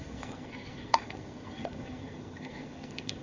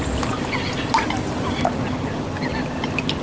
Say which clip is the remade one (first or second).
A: first